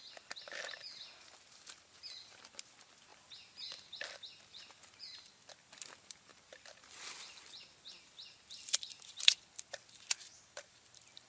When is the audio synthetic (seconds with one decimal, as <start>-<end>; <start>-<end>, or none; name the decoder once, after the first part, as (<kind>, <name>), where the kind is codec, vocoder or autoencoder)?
none